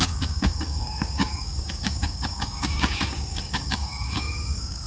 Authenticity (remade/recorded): remade